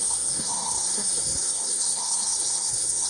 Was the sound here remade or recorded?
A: remade